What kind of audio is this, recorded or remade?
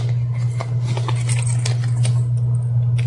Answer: recorded